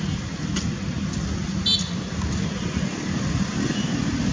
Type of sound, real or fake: real